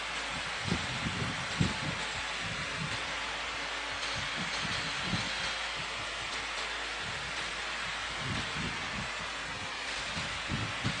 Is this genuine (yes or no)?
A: yes